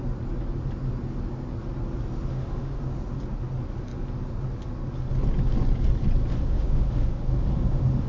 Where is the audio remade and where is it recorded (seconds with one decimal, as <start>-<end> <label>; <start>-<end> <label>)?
0.0-2.3 recorded; 2.3-2.8 remade; 2.8-6.3 recorded; 6.3-8.1 remade